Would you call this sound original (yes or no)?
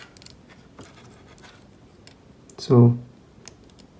yes